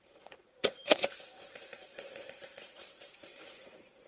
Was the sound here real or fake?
fake